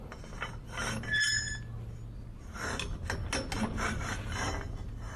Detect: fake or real real